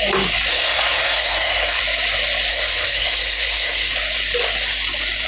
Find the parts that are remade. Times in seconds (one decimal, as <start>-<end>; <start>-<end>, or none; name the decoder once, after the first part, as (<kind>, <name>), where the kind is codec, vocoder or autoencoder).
0.5-1.8 (codec, SNAC); 2.5-3.9